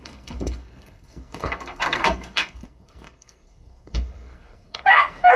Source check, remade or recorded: remade